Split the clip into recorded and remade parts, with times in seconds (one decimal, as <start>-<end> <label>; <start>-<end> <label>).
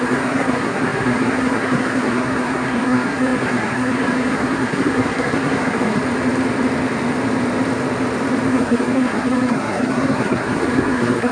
0.0-6.0 remade; 6.0-8.5 recorded; 8.5-11.3 remade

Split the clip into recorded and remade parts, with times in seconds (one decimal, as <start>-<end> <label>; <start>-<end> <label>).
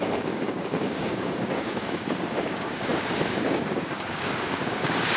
0.0-5.2 remade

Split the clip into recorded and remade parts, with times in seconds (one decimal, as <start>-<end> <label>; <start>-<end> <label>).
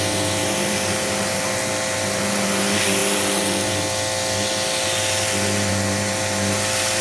0.0-7.0 recorded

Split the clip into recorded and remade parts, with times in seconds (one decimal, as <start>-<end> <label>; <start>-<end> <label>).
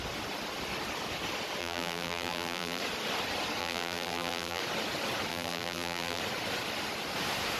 0.0-1.6 recorded; 1.6-2.8 remade; 2.8-3.6 recorded; 3.6-4.6 remade; 4.6-5.3 recorded; 5.3-6.2 remade; 6.2-7.6 recorded